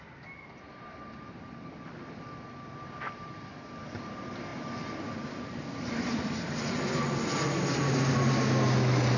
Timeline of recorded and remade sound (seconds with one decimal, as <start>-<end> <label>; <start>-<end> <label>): 0.0-9.2 recorded